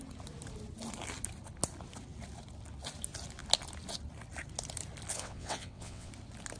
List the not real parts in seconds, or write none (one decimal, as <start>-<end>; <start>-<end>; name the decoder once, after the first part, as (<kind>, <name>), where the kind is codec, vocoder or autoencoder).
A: 5.1-6.1 (vocoder, WaveNeXt)